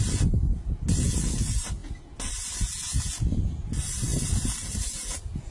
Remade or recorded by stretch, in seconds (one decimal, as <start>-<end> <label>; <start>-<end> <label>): 0.0-5.5 recorded